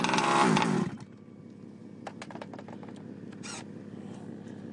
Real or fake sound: real